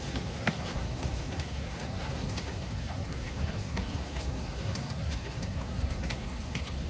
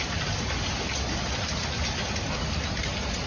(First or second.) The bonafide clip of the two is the second